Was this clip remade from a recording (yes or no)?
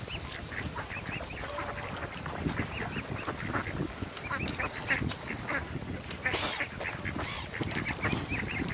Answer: no